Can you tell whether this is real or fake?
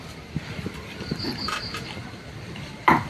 fake